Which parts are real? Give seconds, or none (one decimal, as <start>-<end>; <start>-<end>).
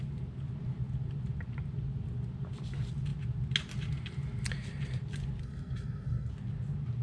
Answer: 0.0-5.4; 6.3-7.0